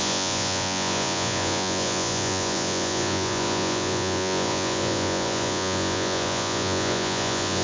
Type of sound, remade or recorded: remade